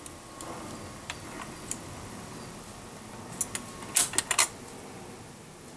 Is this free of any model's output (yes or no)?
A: yes